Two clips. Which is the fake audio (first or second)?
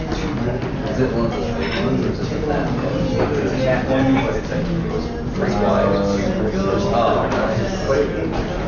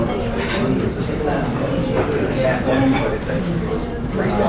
second